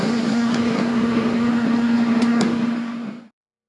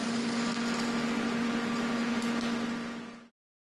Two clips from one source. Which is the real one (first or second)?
second